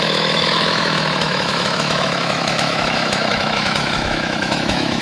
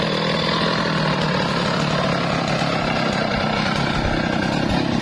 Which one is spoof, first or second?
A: first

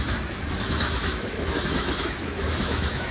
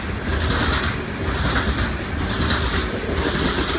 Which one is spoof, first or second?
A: first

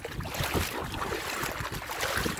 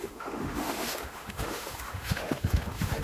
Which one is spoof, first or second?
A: second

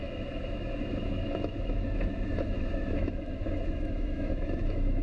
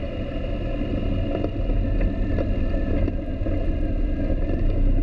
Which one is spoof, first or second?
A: first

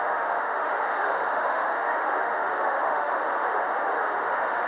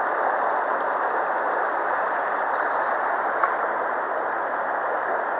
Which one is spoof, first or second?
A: first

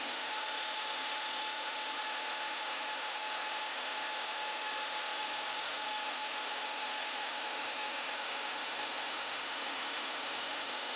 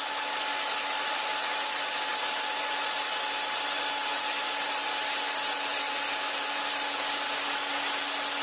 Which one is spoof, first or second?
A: first